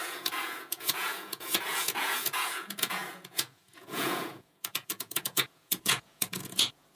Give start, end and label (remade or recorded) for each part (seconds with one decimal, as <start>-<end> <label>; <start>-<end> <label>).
0.0-7.0 remade